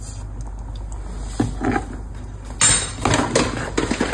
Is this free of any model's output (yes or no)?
yes